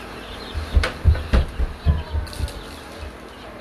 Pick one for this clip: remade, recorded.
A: recorded